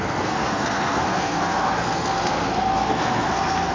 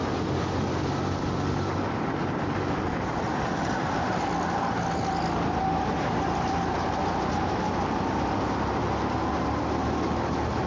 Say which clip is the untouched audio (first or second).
second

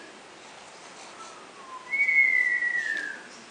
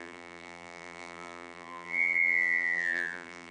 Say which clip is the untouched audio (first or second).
first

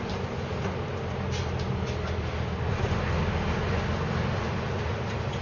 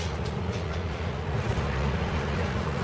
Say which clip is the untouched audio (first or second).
first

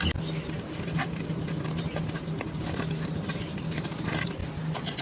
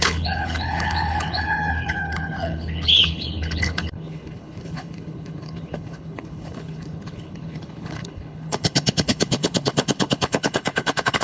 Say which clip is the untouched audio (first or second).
first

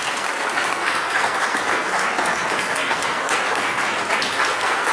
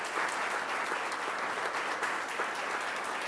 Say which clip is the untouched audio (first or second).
second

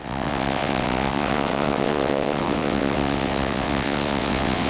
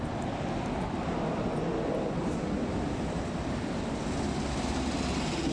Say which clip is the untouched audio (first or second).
second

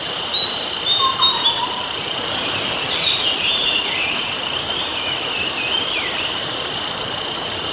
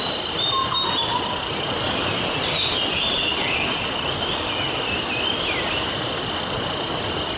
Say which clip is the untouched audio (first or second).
second